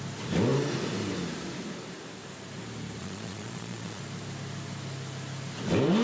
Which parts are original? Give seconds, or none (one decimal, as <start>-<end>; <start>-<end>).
0.0-3.0; 4.0-6.0